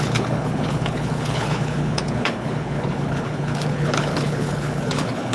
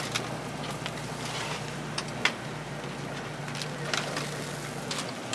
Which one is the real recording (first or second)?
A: second